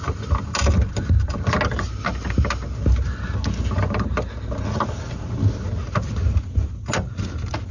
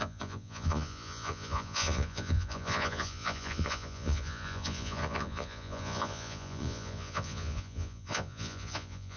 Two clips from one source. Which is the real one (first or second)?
first